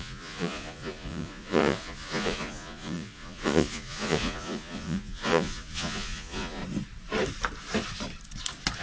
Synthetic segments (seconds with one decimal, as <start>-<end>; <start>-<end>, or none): 0.0-6.6